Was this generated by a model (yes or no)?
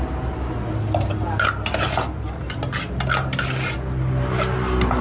no